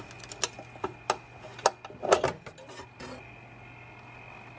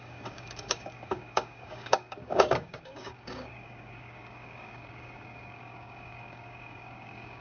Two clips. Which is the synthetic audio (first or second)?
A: second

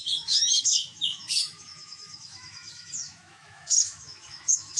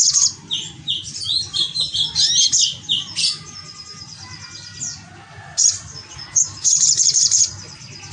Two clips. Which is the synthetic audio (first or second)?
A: first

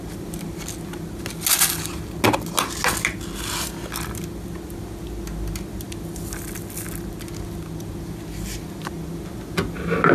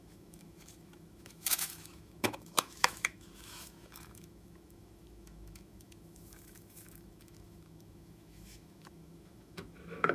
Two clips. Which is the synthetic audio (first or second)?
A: second